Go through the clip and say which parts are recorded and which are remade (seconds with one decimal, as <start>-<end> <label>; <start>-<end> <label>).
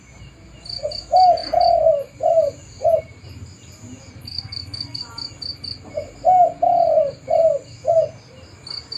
0.0-4.2 recorded; 4.2-5.0 remade; 5.0-9.0 recorded